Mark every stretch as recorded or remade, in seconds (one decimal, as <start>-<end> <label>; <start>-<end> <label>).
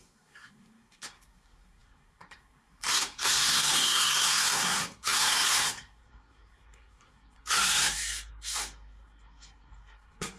0.0-10.4 remade